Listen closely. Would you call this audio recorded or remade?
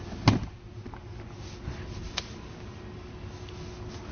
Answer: recorded